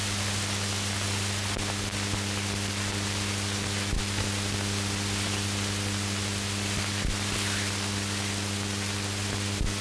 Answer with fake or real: real